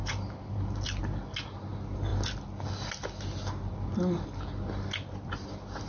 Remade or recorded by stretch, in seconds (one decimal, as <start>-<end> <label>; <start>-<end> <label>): 0.0-1.0 remade; 1.0-5.9 recorded